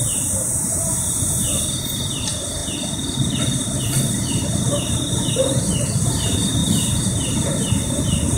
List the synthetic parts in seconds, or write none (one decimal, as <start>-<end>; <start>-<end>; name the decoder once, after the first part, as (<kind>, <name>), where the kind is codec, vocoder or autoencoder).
0.0-2.6 (vocoder, BigVGAN v2); 3.4-8.4